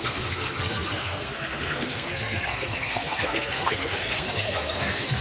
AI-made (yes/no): yes